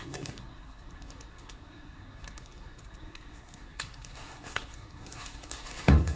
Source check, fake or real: fake